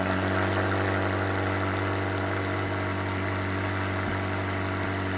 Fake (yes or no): no